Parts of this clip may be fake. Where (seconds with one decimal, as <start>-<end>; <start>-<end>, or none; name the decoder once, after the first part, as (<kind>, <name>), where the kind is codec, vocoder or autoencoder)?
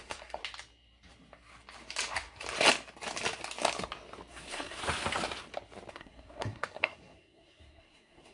0.0-0.4 (codec, SNAC); 4.3-4.8; 5.9-8.3